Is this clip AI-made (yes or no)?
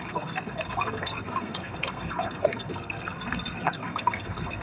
yes